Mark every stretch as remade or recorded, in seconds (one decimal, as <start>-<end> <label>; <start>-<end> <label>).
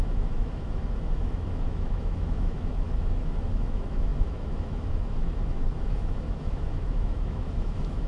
0.0-8.1 remade